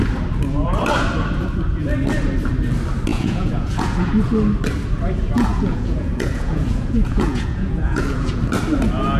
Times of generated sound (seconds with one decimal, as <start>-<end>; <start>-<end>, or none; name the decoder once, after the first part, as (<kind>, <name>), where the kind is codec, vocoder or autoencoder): 3.1-4.1 (vocoder, Vocos); 5.5-8.4